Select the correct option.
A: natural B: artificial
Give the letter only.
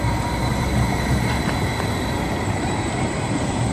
B